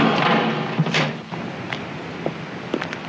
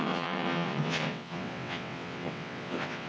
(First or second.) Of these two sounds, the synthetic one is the second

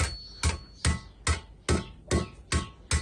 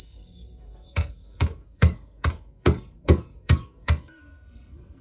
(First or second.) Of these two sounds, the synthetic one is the second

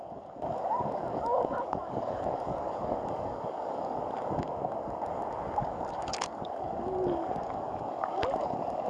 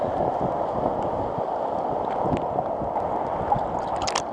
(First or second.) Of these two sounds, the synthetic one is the first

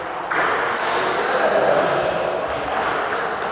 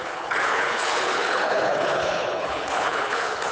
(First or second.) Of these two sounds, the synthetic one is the second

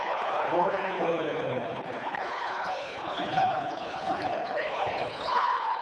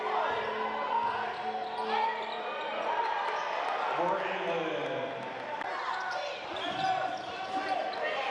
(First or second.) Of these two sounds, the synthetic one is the first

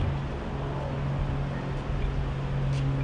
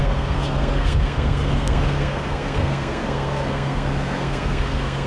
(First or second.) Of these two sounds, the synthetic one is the second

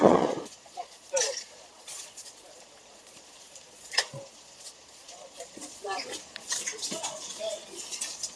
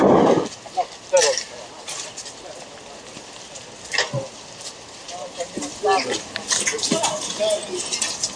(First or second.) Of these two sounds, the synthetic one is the first